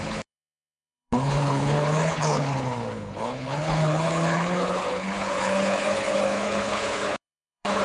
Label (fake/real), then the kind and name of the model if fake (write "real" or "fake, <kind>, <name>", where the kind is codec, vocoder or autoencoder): fake, codec, HILCodec